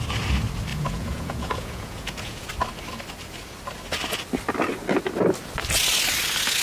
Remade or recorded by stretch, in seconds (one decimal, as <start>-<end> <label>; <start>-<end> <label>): 0.0-0.7 recorded; 0.7-2.5 remade; 2.5-6.6 recorded